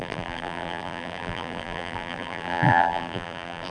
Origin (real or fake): fake